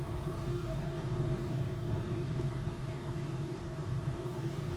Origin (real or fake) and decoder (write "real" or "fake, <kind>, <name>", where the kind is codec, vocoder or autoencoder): fake, codec, DAC